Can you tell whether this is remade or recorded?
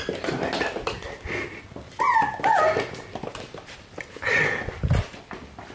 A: recorded